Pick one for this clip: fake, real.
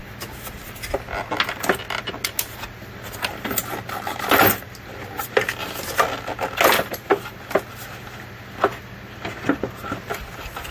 real